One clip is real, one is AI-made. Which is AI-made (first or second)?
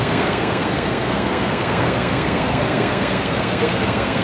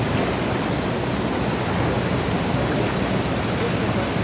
first